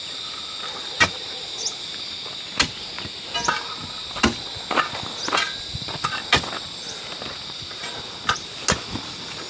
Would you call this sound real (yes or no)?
yes